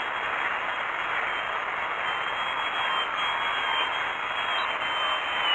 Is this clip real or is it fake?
real